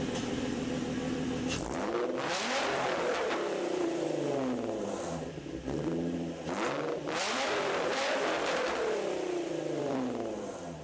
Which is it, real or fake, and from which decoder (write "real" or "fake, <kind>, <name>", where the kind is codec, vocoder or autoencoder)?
fake, vocoder, BigVGAN v2